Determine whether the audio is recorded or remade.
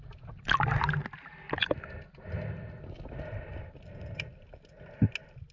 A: recorded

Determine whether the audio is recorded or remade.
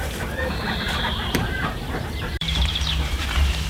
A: remade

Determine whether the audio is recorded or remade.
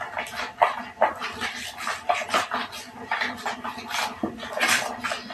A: recorded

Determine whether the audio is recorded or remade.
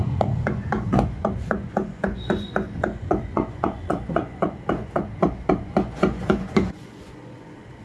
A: remade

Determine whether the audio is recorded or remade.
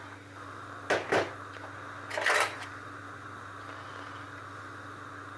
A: recorded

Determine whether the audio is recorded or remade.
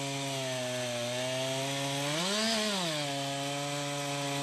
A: recorded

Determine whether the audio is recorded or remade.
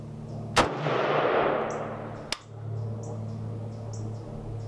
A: recorded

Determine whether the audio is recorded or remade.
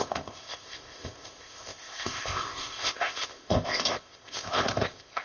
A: remade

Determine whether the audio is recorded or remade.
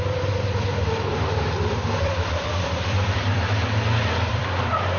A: remade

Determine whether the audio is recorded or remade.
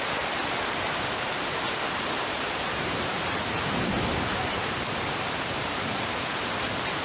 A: remade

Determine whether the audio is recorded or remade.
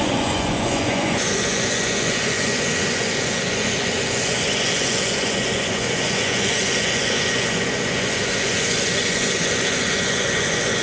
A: remade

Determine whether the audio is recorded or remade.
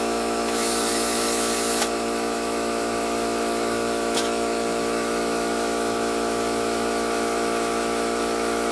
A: remade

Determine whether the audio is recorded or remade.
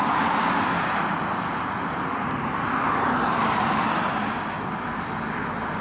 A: recorded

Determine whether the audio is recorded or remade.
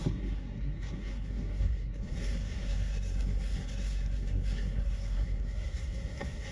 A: remade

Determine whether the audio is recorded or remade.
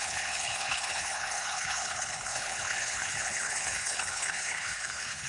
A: remade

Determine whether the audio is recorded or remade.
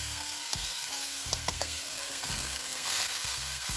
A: remade